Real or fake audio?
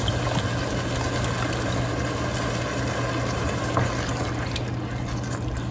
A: real